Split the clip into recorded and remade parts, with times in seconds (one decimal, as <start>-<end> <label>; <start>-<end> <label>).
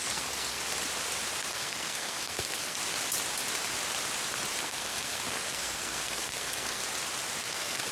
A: 0.0-0.6 remade; 0.6-1.5 recorded; 1.5-2.8 remade; 2.8-4.6 recorded; 4.6-6.8 remade; 6.8-7.4 recorded; 7.4-7.9 remade